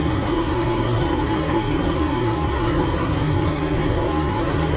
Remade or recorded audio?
remade